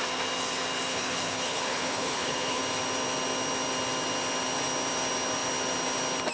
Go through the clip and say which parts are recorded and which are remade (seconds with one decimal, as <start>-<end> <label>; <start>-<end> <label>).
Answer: 0.0-0.9 recorded; 0.9-2.6 remade; 2.6-6.3 recorded